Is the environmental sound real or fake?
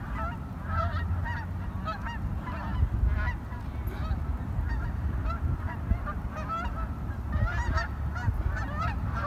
real